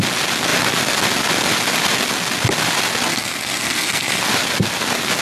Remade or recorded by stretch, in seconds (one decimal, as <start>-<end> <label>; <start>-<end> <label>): 0.0-3.1 recorded; 3.1-4.2 remade; 4.2-5.2 recorded